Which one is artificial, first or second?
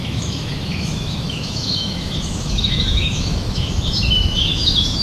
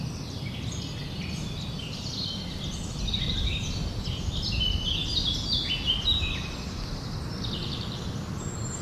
first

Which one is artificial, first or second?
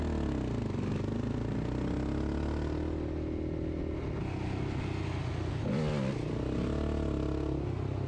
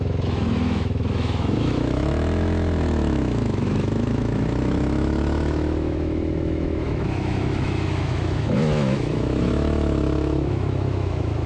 second